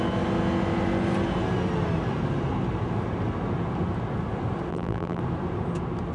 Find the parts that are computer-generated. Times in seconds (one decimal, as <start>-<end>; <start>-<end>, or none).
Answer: 4.7-5.2